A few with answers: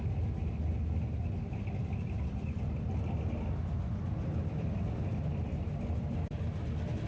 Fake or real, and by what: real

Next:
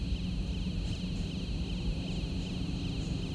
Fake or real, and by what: real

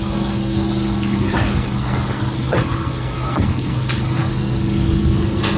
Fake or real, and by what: fake, codec, SNAC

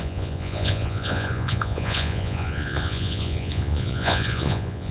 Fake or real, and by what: fake, vocoder, Vocos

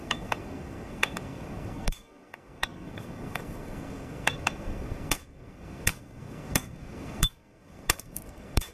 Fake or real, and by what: fake, codec, SNAC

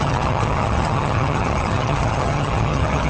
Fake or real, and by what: fake, vocoder, HiFi-GAN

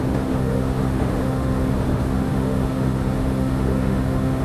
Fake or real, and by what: fake, autoencoder, DAC-VAE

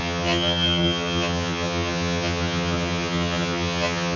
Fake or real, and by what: fake, vocoder, HiFi-GAN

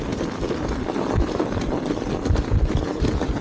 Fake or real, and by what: real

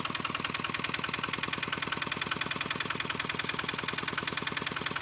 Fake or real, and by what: real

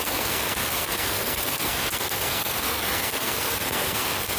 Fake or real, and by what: fake, codec, SNAC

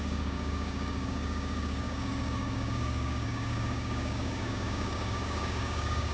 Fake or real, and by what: fake, codec, DAC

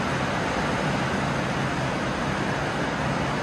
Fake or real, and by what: real